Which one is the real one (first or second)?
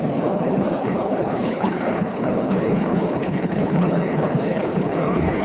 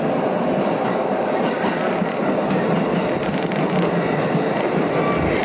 second